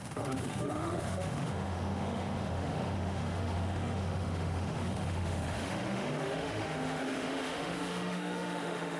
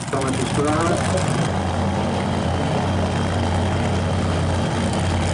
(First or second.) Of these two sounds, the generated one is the first